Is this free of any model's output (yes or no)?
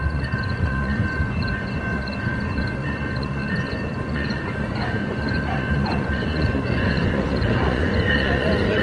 no